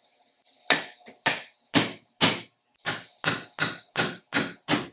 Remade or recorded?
recorded